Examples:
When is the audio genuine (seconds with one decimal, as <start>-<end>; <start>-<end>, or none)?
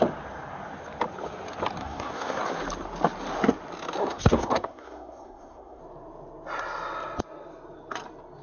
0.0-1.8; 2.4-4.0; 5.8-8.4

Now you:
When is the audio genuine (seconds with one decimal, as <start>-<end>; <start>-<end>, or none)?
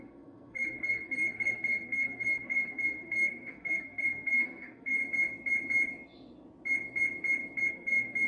5.0-7.7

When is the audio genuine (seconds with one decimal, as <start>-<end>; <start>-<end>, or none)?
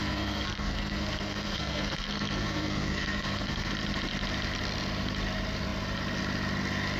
3.7-7.0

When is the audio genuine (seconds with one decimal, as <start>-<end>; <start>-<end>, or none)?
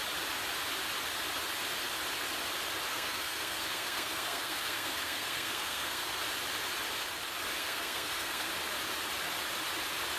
0.0-2.9; 6.2-7.6; 8.5-10.2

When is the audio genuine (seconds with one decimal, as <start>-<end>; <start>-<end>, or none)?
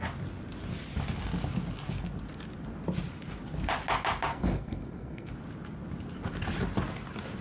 0.0-4.3; 5.3-7.4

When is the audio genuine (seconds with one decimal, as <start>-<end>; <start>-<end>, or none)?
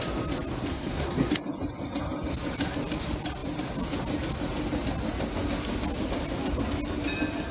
0.0-0.7; 1.3-7.5